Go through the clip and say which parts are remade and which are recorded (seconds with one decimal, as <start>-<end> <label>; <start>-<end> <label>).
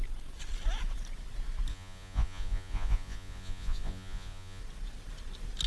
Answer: 0.0-1.7 recorded; 1.7-4.6 remade; 4.6-5.7 recorded